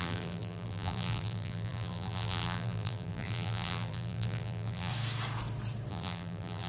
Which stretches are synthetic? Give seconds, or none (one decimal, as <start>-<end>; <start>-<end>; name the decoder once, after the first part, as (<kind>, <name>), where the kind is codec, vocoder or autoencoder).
0.0-4.9 (vocoder, BigVGAN v2); 5.9-6.7